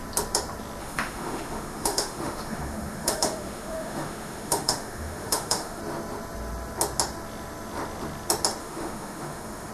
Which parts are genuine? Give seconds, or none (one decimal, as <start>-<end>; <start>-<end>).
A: 0.0-0.8; 5.8-8.6